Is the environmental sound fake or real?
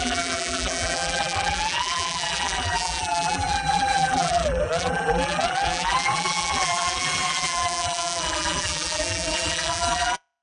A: fake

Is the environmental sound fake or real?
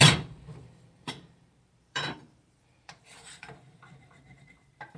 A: fake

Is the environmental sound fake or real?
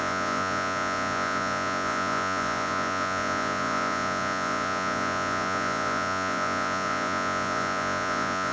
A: fake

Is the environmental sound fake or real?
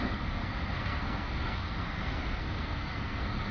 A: fake